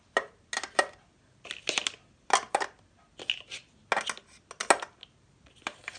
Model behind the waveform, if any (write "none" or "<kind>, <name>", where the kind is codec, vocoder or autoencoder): none